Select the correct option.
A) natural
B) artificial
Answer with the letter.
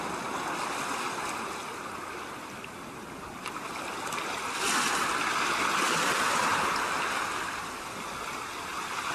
A